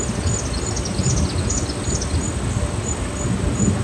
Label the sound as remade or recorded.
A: recorded